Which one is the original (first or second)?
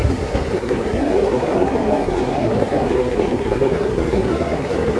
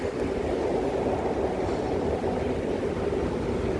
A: second